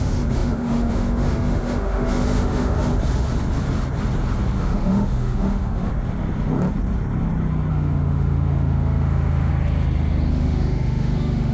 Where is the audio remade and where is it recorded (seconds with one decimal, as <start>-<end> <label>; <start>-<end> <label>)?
0.0-2.9 remade; 2.9-4.6 recorded; 4.6-5.9 remade; 5.9-7.7 recorded; 7.7-9.5 remade; 9.5-10.3 recorded; 10.3-11.5 remade